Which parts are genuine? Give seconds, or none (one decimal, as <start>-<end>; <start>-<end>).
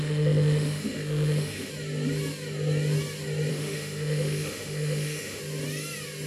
1.7-3.5; 5.4-6.3